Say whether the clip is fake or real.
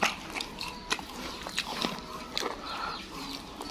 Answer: real